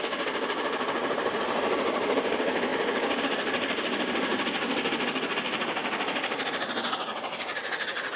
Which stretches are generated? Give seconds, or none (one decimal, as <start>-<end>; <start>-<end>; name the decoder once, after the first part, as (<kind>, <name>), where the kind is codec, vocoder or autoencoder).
0.0-2.7 (vocoder, BigVGAN v2); 3.2-4.3; 5.2-5.8; 6.5-8.2